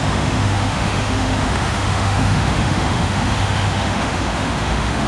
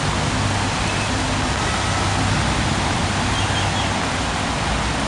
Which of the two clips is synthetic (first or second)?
first